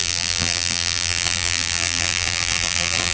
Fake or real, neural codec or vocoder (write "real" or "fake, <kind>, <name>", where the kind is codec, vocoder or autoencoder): fake, vocoder, BigVGAN v2